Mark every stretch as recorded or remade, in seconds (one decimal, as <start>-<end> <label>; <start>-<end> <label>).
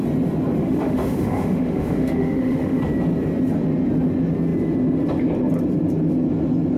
0.0-0.6 recorded; 0.6-2.8 remade; 2.8-6.8 recorded